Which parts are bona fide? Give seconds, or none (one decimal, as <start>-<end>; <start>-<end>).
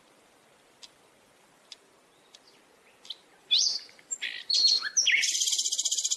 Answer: 0.0-6.2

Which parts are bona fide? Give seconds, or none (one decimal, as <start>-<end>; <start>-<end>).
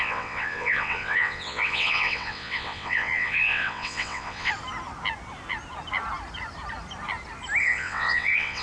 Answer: 4.5-7.6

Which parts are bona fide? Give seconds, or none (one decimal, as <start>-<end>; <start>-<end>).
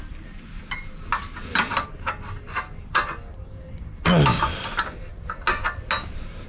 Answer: 0.0-6.5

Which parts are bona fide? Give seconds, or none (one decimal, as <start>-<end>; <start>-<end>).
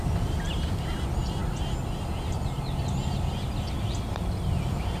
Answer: 1.4-3.3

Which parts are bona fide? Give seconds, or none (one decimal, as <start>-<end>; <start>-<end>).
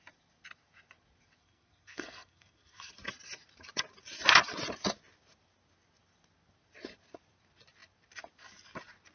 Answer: 0.0-1.4; 2.9-9.1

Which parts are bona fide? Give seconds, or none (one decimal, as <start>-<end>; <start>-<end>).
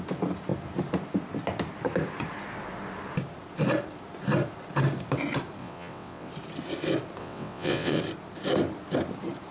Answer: 0.0-5.6; 6.3-7.2; 8.0-9.5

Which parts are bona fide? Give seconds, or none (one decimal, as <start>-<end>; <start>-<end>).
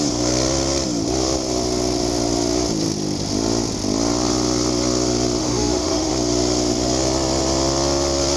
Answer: 0.0-5.4; 6.1-8.4